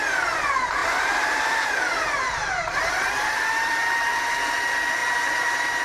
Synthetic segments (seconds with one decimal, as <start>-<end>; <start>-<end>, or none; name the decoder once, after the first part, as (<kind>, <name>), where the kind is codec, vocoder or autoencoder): 0.8-4.3 (vocoder, BigVGAN v2); 5.0-5.8